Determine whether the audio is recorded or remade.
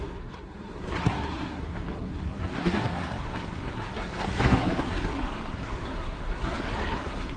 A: remade